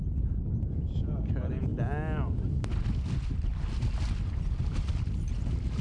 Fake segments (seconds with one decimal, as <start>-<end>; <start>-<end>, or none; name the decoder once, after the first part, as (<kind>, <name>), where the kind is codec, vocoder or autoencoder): none